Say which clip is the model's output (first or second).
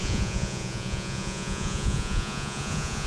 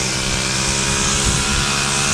first